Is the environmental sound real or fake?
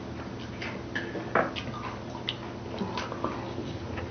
real